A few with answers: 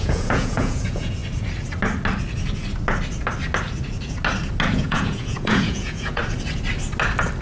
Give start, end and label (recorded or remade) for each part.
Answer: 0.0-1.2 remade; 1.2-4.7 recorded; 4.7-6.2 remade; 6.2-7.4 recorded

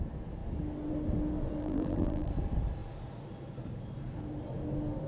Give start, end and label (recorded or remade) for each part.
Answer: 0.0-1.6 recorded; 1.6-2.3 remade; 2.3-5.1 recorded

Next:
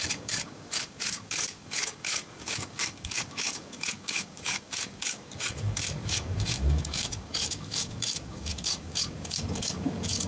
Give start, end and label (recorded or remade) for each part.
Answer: 0.0-10.3 remade